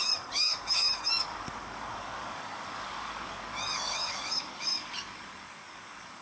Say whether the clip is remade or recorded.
remade